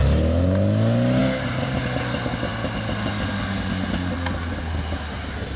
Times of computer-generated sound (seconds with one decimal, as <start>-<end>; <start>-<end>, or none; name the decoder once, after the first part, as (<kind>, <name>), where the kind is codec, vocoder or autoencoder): none